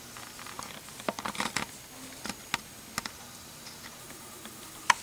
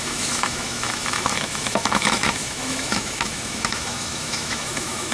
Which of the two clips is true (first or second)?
first